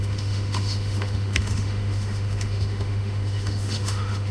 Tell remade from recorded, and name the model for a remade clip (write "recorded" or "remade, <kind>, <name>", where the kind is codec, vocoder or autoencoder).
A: remade, autoencoder, DAC-VAE